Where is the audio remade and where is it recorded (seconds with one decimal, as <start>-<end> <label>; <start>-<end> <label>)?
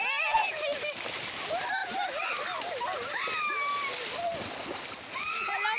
0.0-5.8 recorded